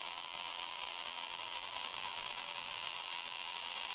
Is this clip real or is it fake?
fake